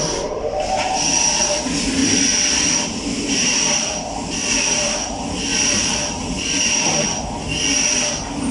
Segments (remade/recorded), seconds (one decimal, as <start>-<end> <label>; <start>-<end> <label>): 0.0-8.5 recorded